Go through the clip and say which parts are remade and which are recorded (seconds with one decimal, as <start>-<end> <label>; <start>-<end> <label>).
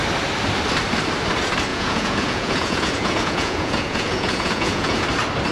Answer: 0.0-1.7 recorded; 1.7-5.0 remade; 5.0-5.5 recorded